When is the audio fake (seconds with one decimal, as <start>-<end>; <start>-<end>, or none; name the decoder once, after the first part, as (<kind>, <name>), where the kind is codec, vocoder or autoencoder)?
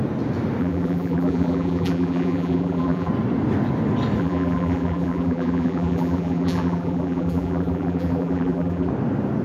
0.6-3.1 (vocoder, BigVGAN v2); 4.2-8.9